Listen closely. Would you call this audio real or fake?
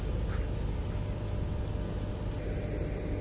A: real